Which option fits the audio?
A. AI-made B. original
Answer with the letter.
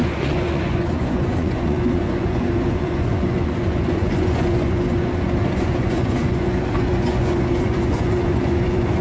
A